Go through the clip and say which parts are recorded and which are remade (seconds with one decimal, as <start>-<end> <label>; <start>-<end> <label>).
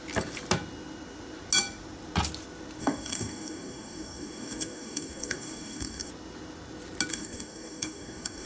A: 0.0-2.8 recorded; 2.8-6.1 remade; 6.1-7.1 recorded; 7.1-8.5 remade